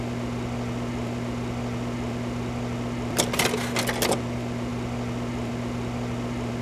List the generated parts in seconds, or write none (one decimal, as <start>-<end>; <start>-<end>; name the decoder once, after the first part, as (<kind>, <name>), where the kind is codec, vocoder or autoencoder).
none